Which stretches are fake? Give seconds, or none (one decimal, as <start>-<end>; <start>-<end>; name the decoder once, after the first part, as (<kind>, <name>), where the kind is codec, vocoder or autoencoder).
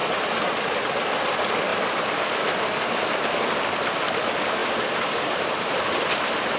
4.6-5.6 (vocoder, BigVGAN v2)